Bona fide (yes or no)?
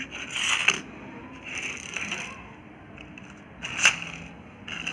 yes